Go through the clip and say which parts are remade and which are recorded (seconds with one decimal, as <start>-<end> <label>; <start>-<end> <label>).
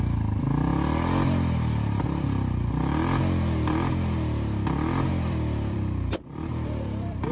0.0-0.7 remade; 0.7-5.1 recorded; 5.1-7.3 remade